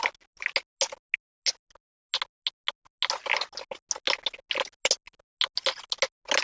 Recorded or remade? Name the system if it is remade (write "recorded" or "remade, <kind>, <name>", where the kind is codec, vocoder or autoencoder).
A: recorded